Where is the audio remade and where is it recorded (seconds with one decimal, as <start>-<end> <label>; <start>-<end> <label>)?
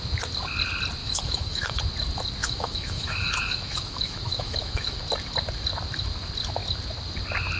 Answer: 0.0-1.0 recorded; 1.0-1.8 remade; 1.8-2.4 recorded; 2.4-5.0 remade; 5.0-7.6 recorded